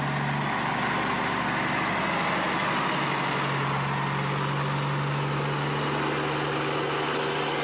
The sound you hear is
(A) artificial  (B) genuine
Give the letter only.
B